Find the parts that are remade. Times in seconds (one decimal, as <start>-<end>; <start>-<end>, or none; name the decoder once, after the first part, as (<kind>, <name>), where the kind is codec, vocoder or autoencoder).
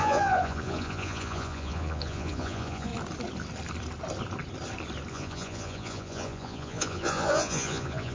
0.0-2.9 (vocoder, Vocos); 5.1-8.1